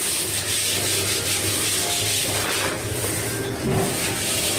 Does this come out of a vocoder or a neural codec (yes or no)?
no